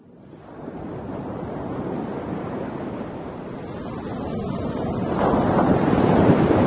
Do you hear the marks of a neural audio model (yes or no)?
yes